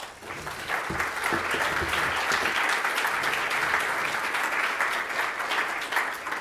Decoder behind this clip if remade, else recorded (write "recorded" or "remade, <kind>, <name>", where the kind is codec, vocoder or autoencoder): recorded